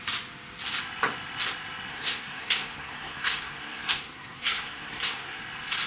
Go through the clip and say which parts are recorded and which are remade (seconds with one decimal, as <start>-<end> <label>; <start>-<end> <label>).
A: 0.0-1.9 recorded; 1.9-5.4 remade; 5.4-5.9 recorded